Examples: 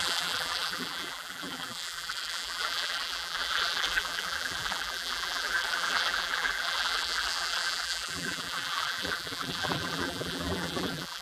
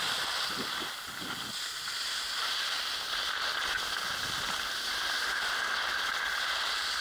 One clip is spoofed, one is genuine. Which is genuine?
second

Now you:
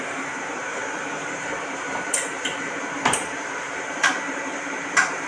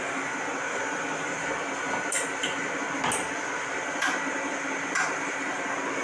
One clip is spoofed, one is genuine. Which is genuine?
second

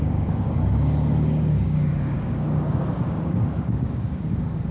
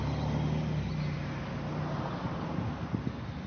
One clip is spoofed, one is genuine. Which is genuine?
second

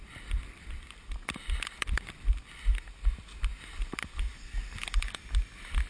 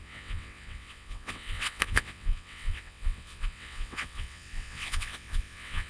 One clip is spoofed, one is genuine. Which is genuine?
first